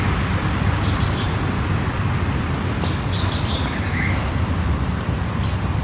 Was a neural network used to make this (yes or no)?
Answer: yes